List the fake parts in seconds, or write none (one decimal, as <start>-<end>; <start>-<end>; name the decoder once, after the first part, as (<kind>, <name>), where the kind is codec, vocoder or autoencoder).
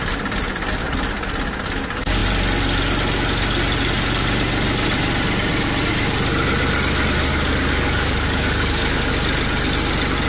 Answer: 7.3-9.1 (codec, DAC)